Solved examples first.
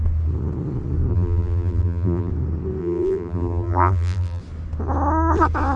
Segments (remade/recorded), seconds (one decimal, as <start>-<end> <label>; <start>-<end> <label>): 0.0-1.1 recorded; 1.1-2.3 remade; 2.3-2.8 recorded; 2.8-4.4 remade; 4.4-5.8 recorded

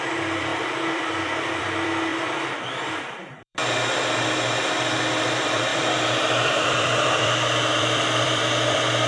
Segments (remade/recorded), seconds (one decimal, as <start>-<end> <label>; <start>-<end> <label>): 0.0-3.6 remade; 3.6-5.1 recorded; 5.1-9.1 remade

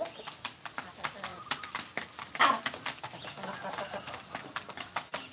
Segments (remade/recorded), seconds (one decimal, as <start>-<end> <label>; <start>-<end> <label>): 0.0-5.3 recorded

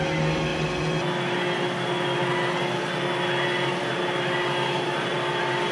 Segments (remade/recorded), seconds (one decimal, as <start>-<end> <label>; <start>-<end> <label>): 0.0-5.7 recorded

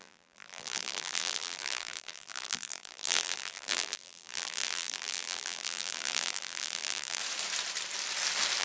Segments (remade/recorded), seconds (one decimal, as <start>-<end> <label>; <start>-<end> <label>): 0.0-7.2 remade; 7.2-8.6 recorded

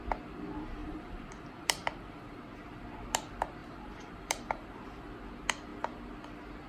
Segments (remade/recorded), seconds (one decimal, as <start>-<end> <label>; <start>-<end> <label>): 0.0-0.8 recorded; 0.8-2.4 remade; 2.4-3.6 recorded; 3.6-5.1 remade; 5.1-6.7 recorded

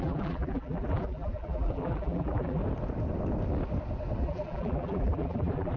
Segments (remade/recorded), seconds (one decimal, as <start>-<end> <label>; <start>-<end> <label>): 0.0-2.6 remade; 2.6-4.2 recorded; 4.2-5.8 remade